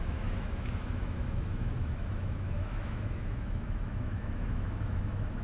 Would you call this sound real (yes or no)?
no